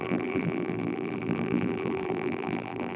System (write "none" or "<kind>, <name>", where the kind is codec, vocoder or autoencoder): vocoder, BigVGAN v2